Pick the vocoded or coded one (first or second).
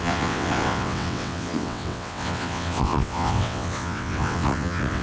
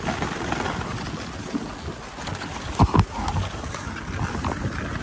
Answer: first